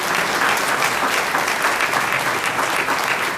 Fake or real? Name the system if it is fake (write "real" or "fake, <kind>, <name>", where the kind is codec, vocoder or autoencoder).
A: real